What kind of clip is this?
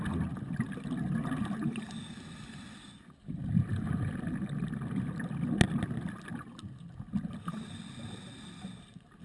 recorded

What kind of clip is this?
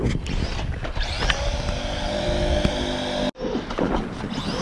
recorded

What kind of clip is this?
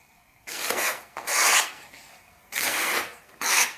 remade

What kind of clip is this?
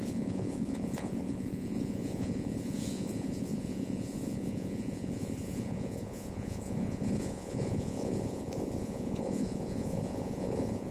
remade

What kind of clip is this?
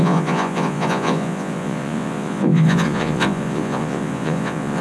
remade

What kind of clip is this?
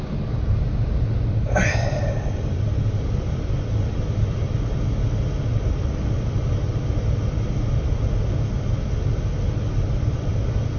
recorded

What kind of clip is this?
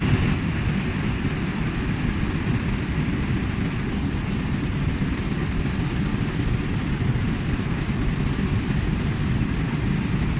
recorded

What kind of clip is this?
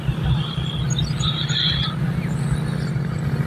recorded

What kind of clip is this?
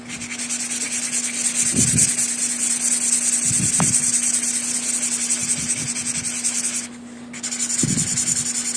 recorded